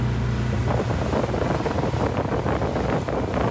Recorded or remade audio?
recorded